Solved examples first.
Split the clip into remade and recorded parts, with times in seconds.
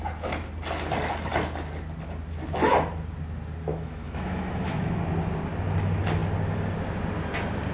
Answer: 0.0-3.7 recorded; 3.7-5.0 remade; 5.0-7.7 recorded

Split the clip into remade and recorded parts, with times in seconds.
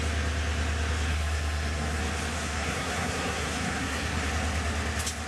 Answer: 0.0-1.1 recorded; 1.1-2.0 remade; 2.0-2.4 recorded; 2.4-4.3 remade; 4.3-5.3 recorded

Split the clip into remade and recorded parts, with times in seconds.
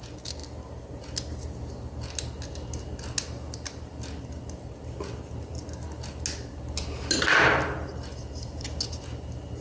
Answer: 0.0-9.6 recorded